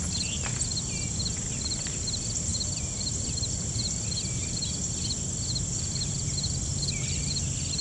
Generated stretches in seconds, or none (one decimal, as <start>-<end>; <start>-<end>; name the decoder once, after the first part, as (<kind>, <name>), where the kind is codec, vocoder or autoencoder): none